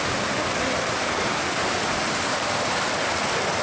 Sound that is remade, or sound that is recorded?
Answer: recorded